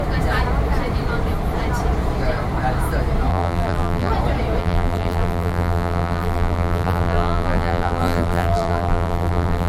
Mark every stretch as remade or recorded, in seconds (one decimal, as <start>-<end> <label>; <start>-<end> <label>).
0.0-3.3 recorded; 3.3-4.1 remade; 4.1-4.6 recorded; 4.6-9.7 remade